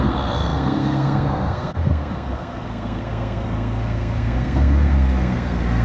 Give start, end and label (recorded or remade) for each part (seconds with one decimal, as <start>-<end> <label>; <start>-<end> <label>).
0.0-5.8 remade